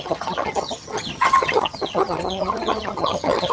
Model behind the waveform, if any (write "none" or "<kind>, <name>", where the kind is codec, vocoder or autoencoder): vocoder, HiFi-GAN